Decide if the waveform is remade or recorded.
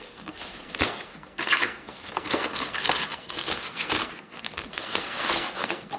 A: remade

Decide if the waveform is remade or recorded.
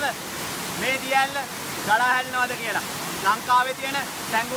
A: recorded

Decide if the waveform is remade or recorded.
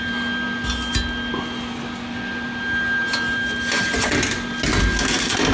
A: recorded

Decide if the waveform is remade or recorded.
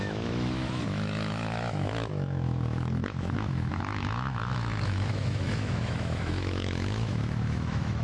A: remade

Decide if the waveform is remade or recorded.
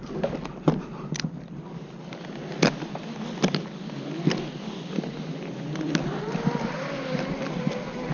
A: recorded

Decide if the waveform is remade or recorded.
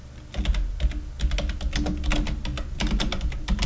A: recorded